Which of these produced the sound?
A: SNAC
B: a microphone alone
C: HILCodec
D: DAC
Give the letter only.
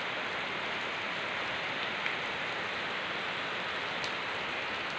B